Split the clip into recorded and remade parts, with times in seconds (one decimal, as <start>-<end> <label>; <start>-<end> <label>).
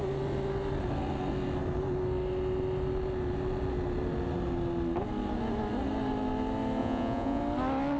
0.0-6.8 recorded; 6.8-7.4 remade; 7.4-8.0 recorded